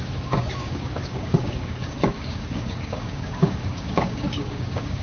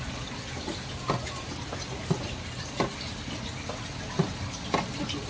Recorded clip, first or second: second